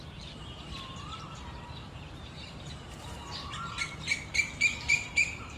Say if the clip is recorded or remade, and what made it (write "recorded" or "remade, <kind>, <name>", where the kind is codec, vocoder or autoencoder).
remade, vocoder, BigVGAN v2